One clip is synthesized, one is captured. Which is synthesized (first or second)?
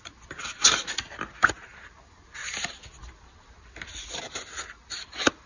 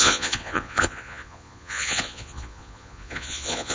second